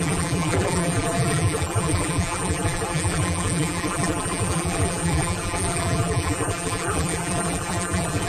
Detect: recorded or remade remade